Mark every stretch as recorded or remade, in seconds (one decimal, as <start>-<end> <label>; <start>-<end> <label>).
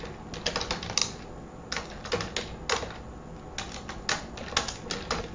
0.0-5.3 recorded